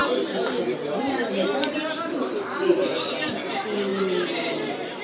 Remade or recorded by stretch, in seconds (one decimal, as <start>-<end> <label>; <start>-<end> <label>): 0.0-5.0 recorded